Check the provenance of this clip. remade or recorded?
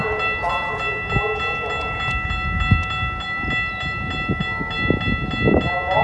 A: recorded